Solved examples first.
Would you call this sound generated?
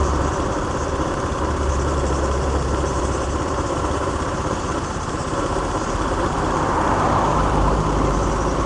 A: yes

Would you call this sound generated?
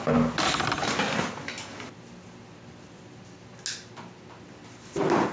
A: no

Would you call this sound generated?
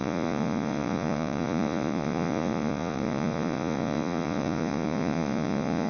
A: yes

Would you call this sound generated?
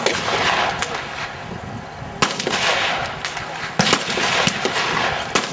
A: no